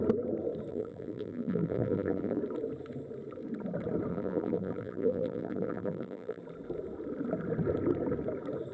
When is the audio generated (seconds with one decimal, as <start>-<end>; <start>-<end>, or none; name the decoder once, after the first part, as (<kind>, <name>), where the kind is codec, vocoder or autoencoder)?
0.7-2.4 (vocoder, BigVGAN v2); 4.1-6.4